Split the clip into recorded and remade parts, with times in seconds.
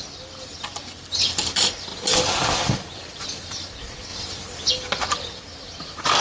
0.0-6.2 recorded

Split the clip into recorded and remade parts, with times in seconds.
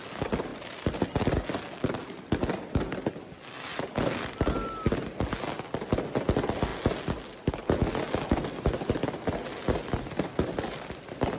0.0-11.4 recorded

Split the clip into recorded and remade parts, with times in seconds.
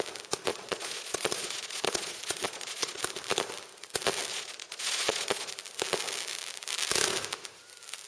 0.0-0.5 recorded; 0.5-3.0 remade; 3.0-4.3 recorded; 4.3-5.5 remade; 5.5-8.1 recorded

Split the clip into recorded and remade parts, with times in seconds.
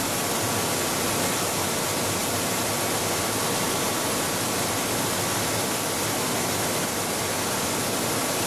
0.0-8.5 recorded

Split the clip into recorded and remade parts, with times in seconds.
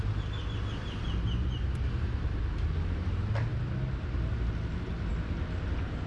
0.0-6.1 recorded